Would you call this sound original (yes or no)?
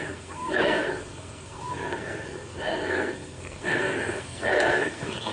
no